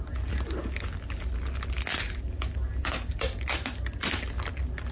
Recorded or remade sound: recorded